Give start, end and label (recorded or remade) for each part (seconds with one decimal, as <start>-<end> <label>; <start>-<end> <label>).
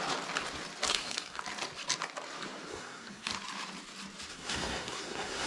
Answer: 0.0-0.9 recorded; 0.9-1.4 remade; 1.4-2.7 recorded; 2.7-3.3 remade; 3.3-4.3 recorded; 4.3-5.5 remade